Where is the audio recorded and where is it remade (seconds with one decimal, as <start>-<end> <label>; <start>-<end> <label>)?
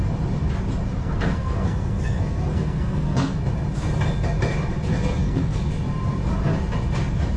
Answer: 0.0-1.0 recorded; 1.0-3.4 remade; 3.4-4.9 recorded; 4.9-5.7 remade; 5.7-7.4 recorded